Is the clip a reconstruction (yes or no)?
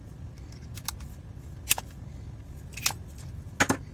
no